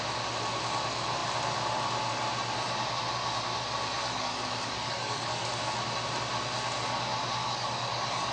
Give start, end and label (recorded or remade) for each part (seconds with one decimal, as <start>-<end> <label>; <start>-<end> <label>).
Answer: 0.0-4.0 recorded; 4.0-5.5 remade; 5.5-7.4 recorded; 7.4-8.3 remade